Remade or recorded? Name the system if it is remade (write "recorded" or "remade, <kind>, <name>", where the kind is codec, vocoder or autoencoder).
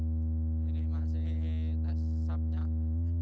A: recorded